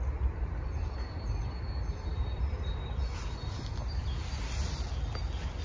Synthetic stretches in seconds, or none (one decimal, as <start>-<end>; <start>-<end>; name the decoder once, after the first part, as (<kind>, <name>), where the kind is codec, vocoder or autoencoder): none